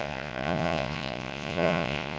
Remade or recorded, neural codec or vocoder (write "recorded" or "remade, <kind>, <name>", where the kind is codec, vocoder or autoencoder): remade, vocoder, Vocos